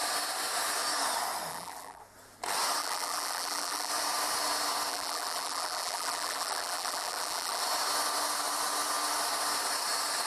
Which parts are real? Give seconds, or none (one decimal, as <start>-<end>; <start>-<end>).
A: 0.0-1.5; 2.0-2.8; 3.9-4.9; 7.6-10.3